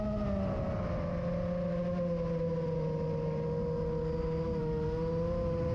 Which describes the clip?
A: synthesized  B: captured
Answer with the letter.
B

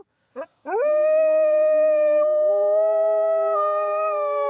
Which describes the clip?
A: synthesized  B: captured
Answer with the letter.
A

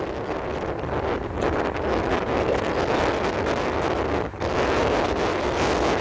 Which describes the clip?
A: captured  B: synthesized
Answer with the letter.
A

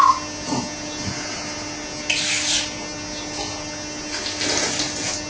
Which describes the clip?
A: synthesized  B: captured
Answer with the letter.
B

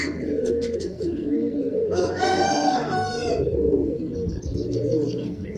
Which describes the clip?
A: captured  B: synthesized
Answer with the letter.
B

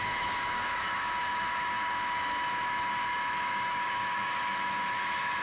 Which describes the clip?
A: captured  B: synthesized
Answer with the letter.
B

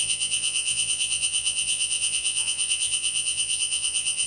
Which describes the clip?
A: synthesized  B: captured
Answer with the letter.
A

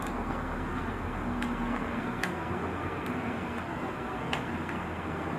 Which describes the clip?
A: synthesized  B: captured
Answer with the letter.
A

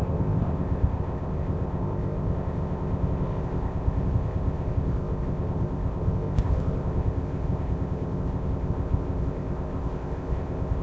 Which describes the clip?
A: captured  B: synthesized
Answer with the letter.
B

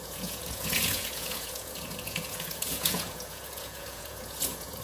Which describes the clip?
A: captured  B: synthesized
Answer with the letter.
B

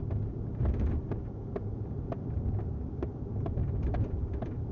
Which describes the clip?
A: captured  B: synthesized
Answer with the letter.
B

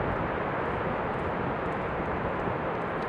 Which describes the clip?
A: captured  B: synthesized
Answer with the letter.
A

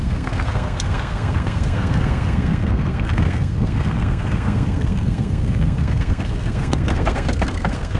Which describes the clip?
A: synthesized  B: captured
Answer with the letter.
A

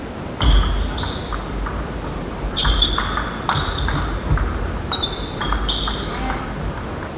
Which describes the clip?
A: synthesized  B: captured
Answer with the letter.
B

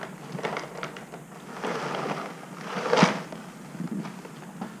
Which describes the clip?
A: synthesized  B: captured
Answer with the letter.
B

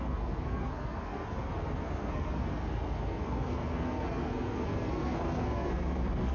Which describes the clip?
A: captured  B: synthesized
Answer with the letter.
B